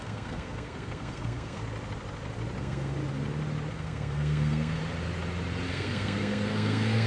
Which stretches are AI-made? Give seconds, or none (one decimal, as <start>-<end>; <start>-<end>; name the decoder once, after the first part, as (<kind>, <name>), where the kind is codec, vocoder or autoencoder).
0.0-1.6 (codec, SNAC); 2.6-3.0; 3.7-4.8; 5.7-7.1